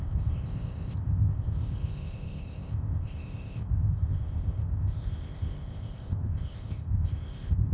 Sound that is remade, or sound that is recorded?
remade